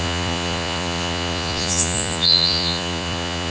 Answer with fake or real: fake